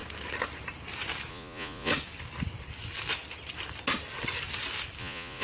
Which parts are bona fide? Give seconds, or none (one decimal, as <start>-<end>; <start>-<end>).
0.0-1.3; 1.9-5.0